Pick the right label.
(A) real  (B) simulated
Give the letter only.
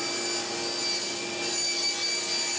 A